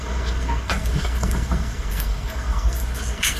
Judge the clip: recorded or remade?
remade